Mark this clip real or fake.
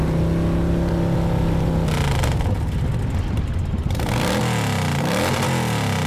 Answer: real